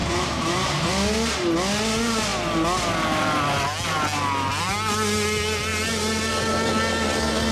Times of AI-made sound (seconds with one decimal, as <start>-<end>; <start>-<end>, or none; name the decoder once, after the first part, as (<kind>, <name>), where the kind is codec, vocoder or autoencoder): 0.0-0.9 (vocoder, BigVGAN v2)